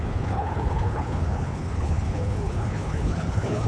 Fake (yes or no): yes